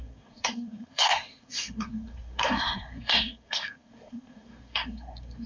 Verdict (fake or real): fake